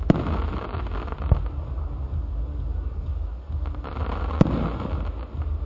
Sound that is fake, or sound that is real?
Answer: real